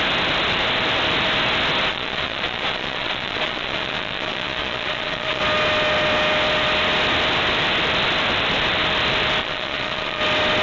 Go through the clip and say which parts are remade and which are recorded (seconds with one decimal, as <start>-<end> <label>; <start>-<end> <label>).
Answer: 0.0-1.9 recorded; 1.9-5.4 remade; 5.4-9.4 recorded; 9.4-10.2 remade; 10.2-10.6 recorded